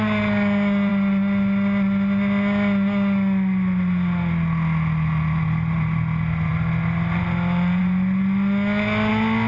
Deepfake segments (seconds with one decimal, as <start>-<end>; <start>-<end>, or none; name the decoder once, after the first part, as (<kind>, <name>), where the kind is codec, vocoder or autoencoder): none